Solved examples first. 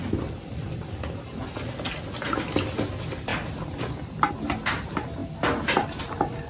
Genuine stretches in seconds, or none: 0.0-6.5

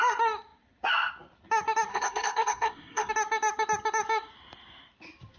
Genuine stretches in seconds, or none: 0.0-1.9; 3.1-5.4

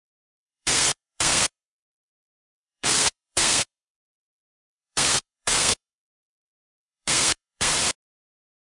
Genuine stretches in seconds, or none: 7.7-8.8

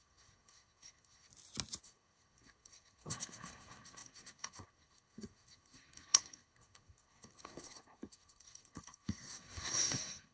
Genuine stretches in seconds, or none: 1.3-1.8